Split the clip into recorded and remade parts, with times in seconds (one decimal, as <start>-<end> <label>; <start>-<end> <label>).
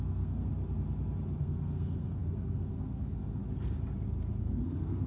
0.0-0.5 remade; 0.5-1.4 recorded; 1.4-3.4 remade; 3.4-4.4 recorded; 4.4-5.1 remade